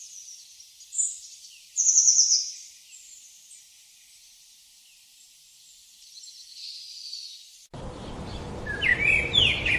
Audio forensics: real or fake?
real